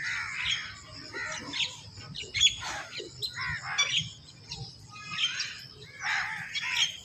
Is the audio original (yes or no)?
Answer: yes